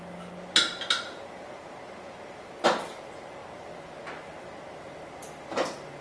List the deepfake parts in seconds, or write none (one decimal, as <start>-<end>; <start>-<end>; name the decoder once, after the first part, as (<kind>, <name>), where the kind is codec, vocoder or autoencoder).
none